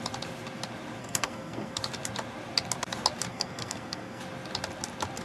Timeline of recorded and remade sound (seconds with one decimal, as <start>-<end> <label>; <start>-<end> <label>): 0.0-1.0 recorded; 1.0-1.8 remade; 1.8-3.3 recorded; 3.3-4.2 remade; 4.2-5.2 recorded